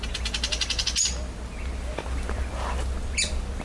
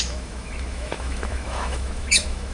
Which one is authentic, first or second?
first